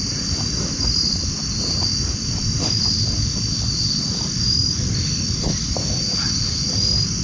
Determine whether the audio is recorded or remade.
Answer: recorded